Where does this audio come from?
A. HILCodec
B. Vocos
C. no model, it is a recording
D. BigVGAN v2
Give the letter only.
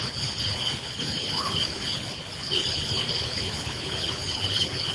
A